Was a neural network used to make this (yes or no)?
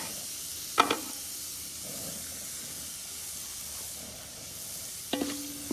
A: no